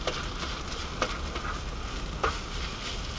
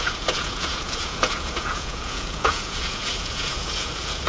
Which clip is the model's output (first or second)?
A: second